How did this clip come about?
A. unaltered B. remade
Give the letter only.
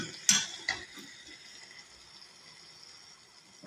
A